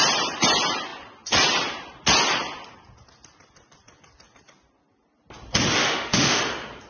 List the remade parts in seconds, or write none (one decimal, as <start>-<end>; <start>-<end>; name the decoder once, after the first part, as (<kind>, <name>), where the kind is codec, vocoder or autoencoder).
5.8-6.4 (autoencoder, DAC-VAE)